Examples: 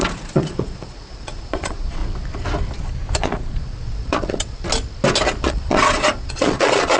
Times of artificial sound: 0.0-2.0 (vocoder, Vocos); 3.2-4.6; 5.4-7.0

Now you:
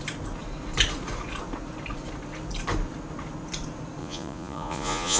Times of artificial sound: 4.0-5.2 (vocoder, Vocos)

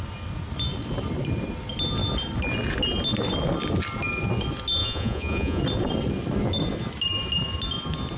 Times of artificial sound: 4.8-5.6 (vocoder, Vocos)

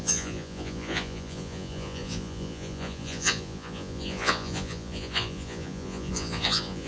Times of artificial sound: 0.0-6.9 (vocoder, Vocos)

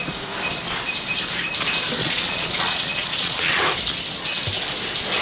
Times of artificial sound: 2.0-3.6 (vocoder, Vocos)

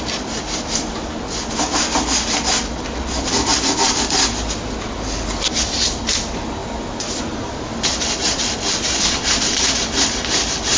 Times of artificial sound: none